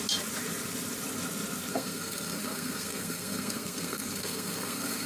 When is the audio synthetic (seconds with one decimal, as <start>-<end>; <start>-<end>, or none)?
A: 1.7-5.1